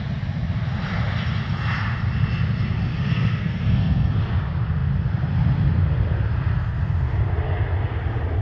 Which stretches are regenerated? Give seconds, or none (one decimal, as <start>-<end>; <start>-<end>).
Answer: 2.9-4.1

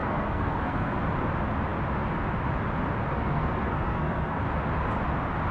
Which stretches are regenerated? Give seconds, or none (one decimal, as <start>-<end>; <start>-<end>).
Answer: 0.0-1.0; 3.1-4.4

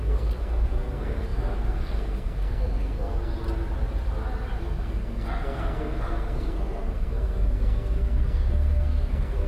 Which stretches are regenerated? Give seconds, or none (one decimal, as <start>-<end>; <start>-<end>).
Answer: 0.0-3.3; 4.6-9.5

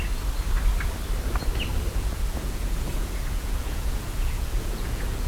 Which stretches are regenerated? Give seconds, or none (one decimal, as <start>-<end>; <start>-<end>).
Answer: 1.9-5.3